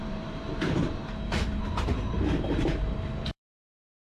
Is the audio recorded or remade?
remade